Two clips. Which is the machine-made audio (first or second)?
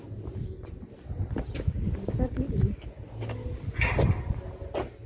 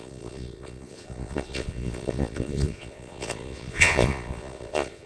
second